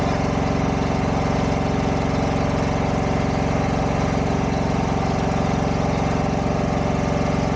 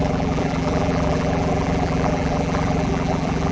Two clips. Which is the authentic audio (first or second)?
first